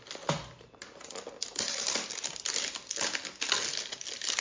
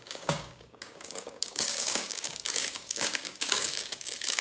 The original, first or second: first